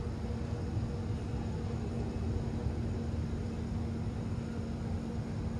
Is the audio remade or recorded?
recorded